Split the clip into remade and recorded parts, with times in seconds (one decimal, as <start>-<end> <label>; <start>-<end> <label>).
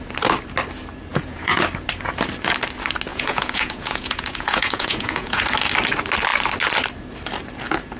0.0-1.1 recorded; 1.1-1.6 remade; 1.6-3.1 recorded; 3.1-5.4 remade; 5.4-8.0 recorded